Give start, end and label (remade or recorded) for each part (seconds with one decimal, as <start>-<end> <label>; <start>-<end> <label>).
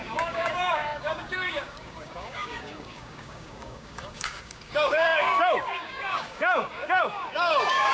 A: 0.0-7.9 remade